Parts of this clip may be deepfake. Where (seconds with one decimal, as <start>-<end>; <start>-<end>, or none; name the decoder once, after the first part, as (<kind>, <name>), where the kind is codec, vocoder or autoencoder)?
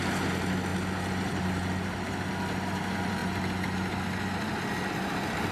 none